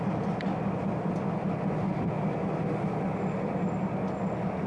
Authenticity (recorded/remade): recorded